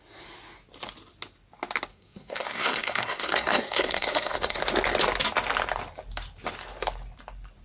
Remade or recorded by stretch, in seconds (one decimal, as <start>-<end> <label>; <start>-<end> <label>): 0.0-1.9 recorded; 1.9-4.6 remade; 4.6-7.6 recorded